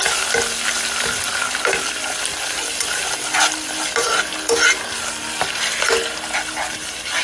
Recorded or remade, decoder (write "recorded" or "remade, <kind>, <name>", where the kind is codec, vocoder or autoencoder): recorded